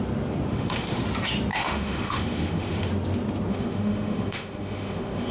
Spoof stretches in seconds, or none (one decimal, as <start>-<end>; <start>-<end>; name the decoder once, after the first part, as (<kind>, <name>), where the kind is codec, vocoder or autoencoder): 0.5-1.0 (autoencoder, DAC-VAE); 1.5-2.9; 3.5-5.3